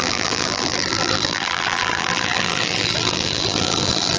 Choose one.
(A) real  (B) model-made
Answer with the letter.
B